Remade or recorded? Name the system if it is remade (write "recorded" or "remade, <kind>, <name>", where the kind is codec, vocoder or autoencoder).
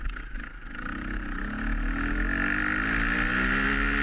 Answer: recorded